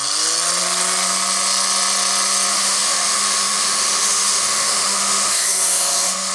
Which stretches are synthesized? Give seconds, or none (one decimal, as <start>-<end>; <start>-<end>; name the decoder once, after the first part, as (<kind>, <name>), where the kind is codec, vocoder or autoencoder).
2.5-6.3 (autoencoder, DAC-VAE)